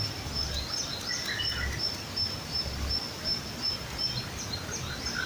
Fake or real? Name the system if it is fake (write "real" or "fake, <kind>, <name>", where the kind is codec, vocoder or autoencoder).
real